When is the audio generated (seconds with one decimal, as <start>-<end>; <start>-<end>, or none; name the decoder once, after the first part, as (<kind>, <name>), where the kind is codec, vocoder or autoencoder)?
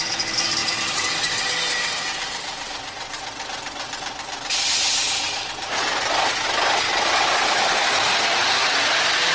0.6-1.1 (vocoder, BigVGAN v2)